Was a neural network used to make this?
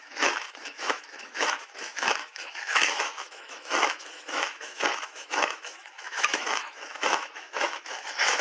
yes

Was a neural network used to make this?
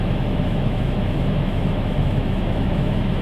yes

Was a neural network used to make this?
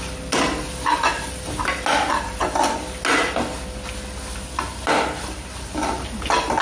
no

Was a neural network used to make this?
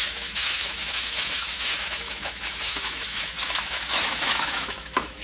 yes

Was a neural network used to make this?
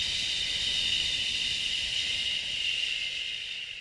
no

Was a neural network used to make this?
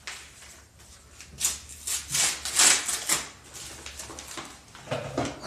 no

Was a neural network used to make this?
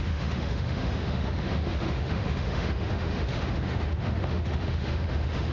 yes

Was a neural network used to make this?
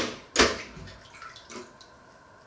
no